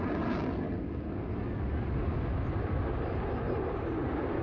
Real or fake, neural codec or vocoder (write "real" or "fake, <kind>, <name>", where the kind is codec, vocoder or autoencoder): real